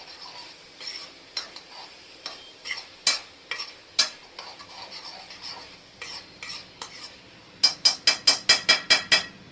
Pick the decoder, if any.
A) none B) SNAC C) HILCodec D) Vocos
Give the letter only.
A